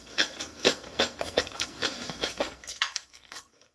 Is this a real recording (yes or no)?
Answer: no